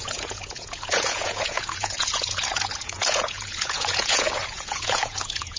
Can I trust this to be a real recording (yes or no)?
no